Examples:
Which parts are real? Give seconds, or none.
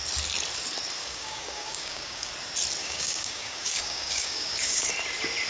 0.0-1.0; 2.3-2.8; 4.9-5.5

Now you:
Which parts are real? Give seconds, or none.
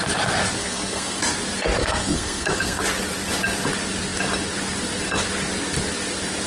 0.0-0.6; 1.2-1.8; 2.8-6.5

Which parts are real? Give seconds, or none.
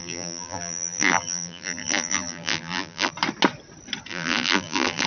3.1-4.1